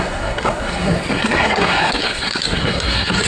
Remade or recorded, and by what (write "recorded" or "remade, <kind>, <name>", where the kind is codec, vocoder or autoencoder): remade, codec, SNAC